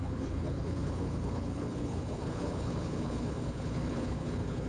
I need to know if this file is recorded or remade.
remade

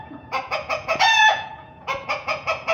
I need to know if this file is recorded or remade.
remade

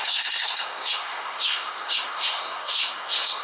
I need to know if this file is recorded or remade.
remade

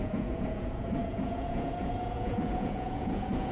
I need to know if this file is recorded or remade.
remade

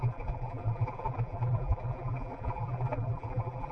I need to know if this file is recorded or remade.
remade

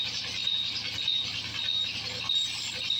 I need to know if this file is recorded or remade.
recorded